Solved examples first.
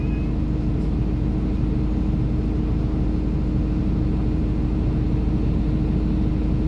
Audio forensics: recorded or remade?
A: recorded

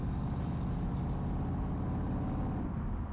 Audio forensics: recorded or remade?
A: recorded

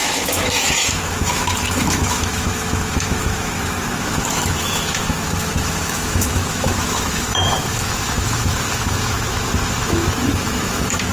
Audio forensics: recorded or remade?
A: remade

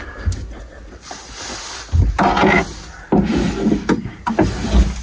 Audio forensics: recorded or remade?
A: recorded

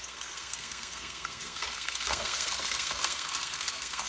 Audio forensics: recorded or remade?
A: remade